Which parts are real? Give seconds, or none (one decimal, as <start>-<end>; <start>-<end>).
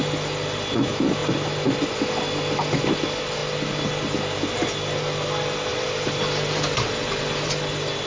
0.0-5.7; 7.5-8.1